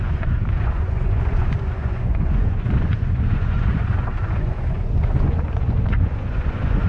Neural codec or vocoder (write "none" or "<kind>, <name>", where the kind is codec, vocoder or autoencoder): vocoder, Vocos